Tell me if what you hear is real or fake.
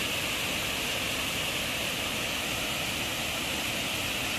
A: real